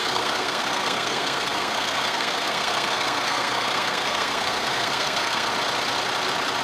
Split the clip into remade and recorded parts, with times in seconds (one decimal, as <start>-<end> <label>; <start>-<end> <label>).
0.0-5.5 remade; 5.5-6.6 recorded